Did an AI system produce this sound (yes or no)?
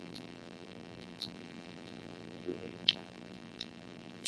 yes